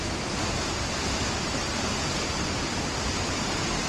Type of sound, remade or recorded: recorded